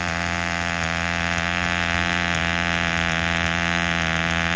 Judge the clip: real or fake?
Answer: real